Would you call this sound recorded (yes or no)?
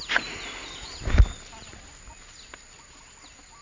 yes